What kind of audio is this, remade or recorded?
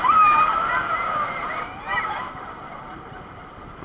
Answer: remade